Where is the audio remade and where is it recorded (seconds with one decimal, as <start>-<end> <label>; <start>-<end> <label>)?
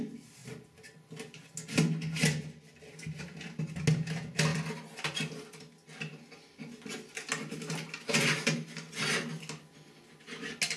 0.0-10.8 recorded